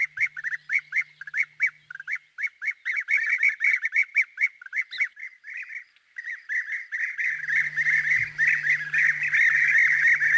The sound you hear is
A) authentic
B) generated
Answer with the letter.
A